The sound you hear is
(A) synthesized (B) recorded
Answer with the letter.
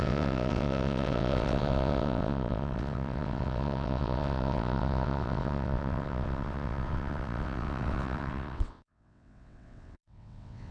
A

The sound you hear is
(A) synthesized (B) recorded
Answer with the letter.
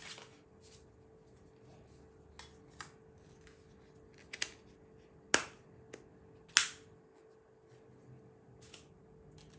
B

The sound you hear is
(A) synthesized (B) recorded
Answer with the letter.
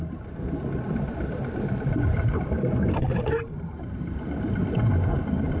B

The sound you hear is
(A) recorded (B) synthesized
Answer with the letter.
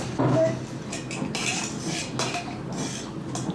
A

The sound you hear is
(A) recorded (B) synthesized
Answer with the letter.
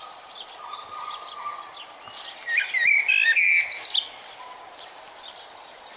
A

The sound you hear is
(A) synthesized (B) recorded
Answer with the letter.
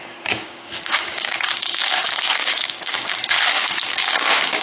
A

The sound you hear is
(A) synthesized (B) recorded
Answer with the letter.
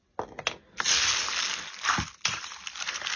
B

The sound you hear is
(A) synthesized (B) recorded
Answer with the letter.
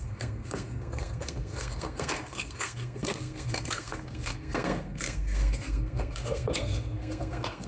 A